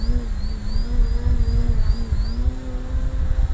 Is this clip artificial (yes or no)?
no